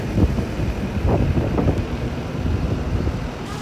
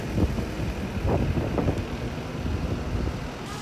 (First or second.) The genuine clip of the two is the second